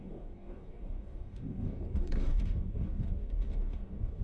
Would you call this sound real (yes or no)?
no